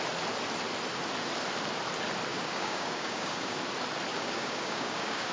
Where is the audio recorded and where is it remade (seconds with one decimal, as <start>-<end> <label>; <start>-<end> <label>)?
0.0-2.3 recorded; 2.3-3.6 remade; 3.6-4.1 recorded; 4.1-5.3 remade